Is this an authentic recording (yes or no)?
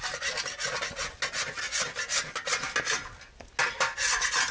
yes